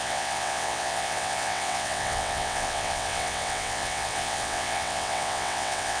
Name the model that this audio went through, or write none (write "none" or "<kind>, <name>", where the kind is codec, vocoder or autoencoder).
vocoder, WaveNeXt